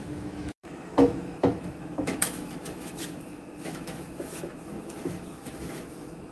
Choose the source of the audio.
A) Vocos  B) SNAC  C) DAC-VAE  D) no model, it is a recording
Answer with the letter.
C